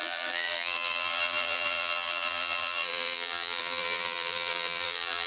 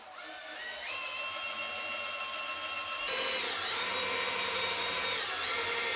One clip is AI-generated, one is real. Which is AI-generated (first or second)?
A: first